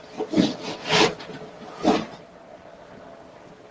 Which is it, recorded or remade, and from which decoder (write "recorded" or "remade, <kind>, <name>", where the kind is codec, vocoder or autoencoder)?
recorded